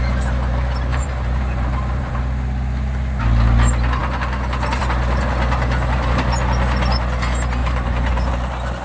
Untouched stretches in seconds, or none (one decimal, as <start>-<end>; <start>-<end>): 0.0-0.9; 2.2-7.6; 8.3-8.8